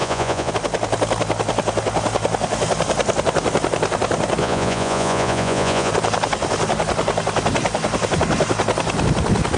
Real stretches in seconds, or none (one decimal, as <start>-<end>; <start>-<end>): 0.5-4.4; 5.9-9.6